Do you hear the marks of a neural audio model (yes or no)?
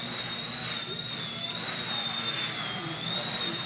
no